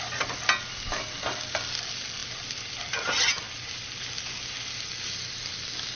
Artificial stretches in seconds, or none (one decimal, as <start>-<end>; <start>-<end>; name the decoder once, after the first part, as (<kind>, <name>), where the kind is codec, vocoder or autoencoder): none